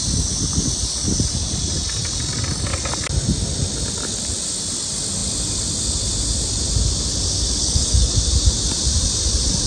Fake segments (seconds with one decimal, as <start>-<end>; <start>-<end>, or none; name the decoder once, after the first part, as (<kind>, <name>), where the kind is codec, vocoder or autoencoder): 7.6-8.1 (codec, DAC)